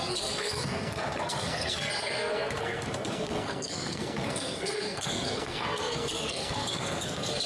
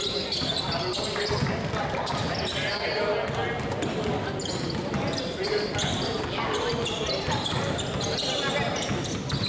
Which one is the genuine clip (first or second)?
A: second